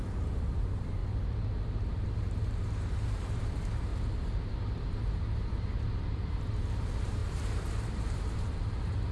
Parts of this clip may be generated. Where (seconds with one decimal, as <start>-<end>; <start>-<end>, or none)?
0.0-1.0; 1.9-3.9; 4.5-9.1